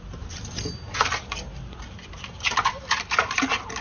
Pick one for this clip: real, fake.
real